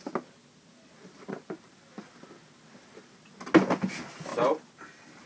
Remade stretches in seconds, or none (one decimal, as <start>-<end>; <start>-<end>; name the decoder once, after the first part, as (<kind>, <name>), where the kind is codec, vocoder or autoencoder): 4.3-5.3 (vocoder, BigVGAN v2)